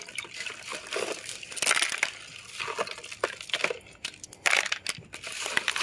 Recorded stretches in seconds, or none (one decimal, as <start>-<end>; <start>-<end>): 0.0-5.8